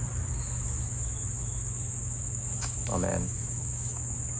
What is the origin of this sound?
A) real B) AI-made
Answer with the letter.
B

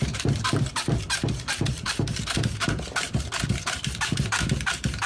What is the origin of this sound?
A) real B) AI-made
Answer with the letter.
B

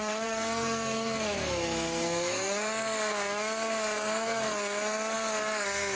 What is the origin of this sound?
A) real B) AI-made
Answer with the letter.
B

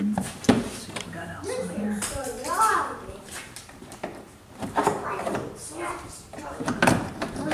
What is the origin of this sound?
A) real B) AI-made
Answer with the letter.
B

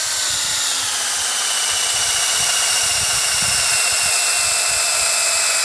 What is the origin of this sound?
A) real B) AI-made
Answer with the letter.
A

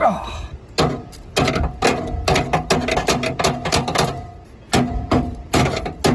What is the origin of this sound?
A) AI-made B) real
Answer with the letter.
B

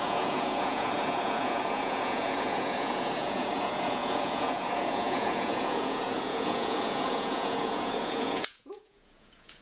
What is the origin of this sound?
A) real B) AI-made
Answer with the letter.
B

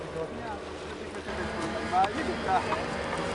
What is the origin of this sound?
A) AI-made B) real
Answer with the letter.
B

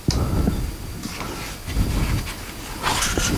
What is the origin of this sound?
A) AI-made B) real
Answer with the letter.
B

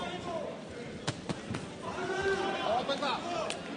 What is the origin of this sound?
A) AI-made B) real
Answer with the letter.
B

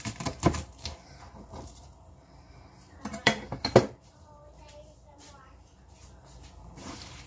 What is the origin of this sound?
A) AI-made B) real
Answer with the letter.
A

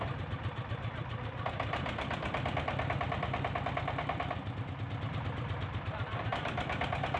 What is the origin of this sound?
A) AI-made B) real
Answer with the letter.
A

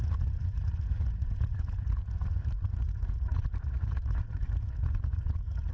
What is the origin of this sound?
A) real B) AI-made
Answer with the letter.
B